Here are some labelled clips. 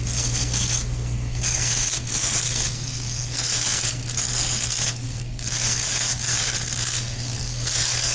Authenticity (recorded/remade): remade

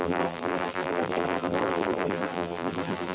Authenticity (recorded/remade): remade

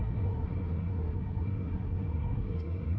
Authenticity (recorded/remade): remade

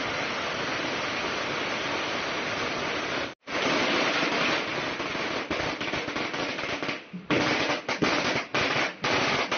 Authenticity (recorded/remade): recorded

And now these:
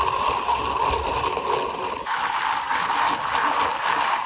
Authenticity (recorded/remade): recorded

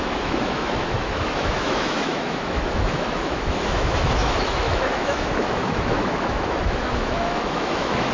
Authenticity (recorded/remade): remade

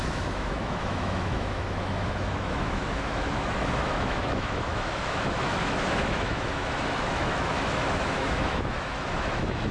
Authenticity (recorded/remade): remade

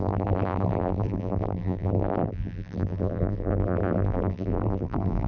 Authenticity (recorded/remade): remade